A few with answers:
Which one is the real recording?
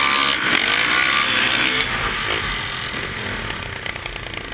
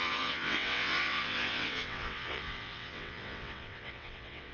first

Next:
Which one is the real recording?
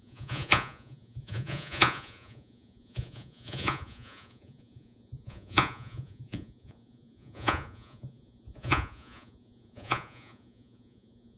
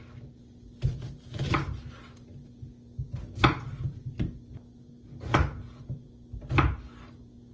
second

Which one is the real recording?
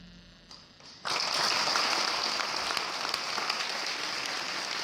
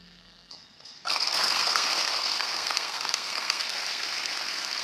first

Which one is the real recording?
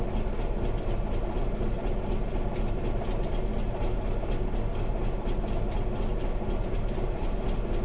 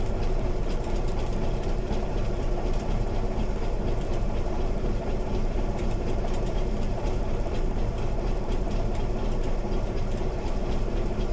first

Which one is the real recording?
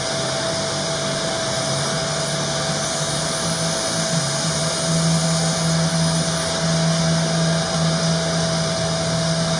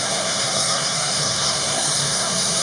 first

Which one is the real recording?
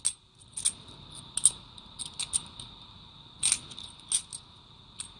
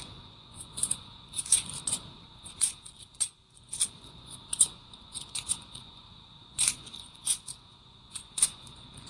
first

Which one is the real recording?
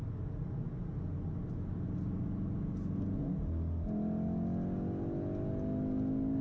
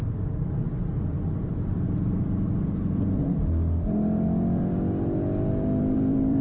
first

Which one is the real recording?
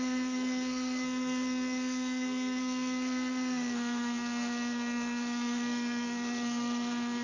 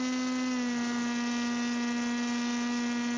second